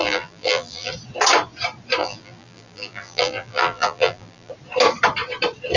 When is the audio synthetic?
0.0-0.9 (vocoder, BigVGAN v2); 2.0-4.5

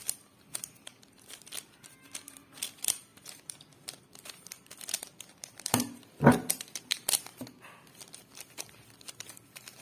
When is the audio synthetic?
0.0-7.3 (vocoder, BigVGAN v2); 9.1-9.8

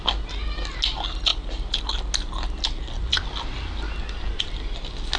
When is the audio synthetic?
none

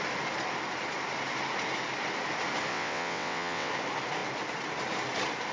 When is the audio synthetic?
2.7-3.7 (vocoder, WaveNeXt)

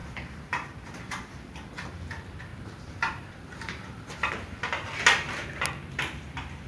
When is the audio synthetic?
0.0-1.3 (vocoder, BigVGAN v2); 2.5-4.3